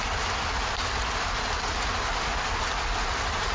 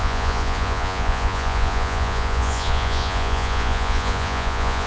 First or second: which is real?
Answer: first